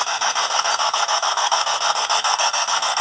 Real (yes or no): no